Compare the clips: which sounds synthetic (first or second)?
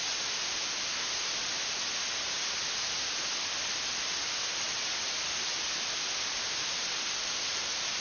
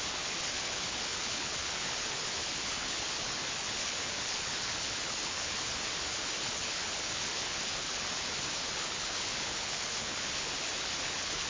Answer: second